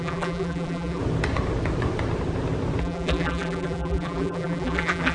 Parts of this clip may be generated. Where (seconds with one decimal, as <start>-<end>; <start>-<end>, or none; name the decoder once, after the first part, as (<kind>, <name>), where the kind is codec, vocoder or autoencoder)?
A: 0.0-1.0 (vocoder, BigVGAN v2); 2.8-5.1